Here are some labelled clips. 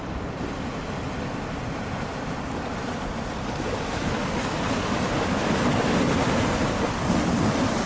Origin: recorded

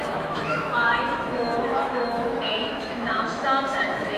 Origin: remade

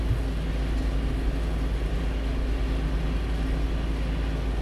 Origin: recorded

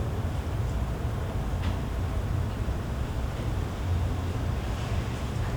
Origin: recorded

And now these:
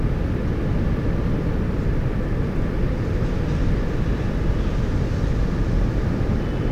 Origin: recorded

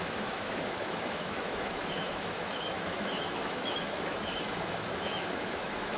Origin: remade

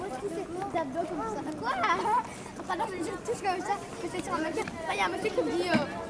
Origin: recorded